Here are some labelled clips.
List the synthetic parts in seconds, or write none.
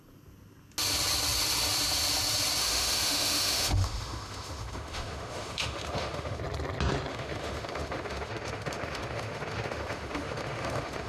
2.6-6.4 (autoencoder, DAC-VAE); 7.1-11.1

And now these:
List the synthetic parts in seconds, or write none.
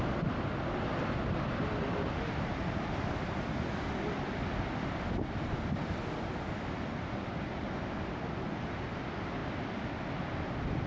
none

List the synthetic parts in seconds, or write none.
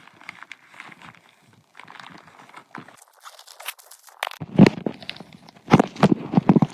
none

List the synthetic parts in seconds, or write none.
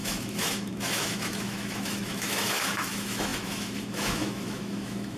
0.0-5.2 (autoencoder, DAC-VAE)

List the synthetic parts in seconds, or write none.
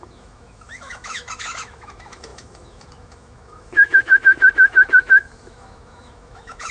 0.0-6.7 (autoencoder, DAC-VAE)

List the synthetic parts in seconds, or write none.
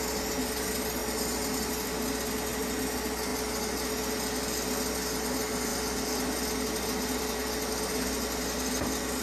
none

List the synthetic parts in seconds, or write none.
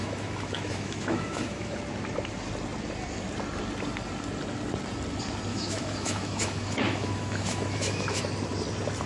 0.0-1.8 (autoencoder, DAC-VAE); 5.5-8.2